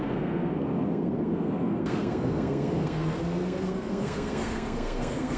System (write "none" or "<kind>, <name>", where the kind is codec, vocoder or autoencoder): codec, SNAC